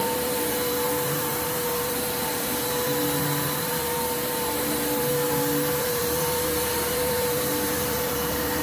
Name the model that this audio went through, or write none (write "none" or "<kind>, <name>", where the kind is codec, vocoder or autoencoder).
vocoder, BigVGAN v2